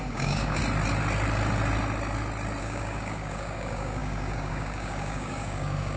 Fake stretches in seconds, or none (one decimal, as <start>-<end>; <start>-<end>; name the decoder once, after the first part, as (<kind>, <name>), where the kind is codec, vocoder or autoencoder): 0.0-0.6 (codec, DAC); 2.6-6.0